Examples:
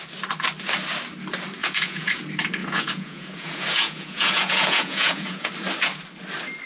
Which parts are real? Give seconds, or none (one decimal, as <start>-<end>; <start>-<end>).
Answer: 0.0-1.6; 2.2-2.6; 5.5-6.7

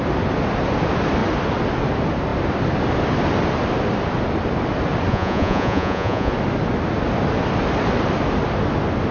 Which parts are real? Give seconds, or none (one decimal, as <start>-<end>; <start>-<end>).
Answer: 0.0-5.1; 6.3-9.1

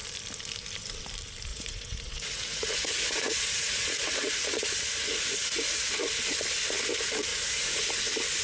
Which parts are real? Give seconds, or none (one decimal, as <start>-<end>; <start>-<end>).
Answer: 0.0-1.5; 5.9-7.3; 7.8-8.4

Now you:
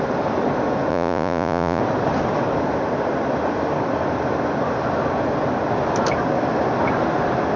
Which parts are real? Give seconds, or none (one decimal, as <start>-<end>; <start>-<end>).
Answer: 0.0-0.9; 1.8-7.6